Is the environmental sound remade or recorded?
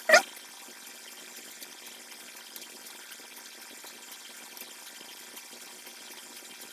recorded